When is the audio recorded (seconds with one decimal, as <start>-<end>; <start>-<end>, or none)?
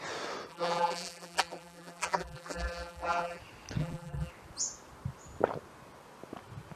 0.0-0.5; 3.4-3.8; 4.3-6.8